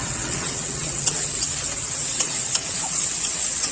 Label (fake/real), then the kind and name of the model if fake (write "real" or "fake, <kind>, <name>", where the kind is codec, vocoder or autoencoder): fake, vocoder, WaveNeXt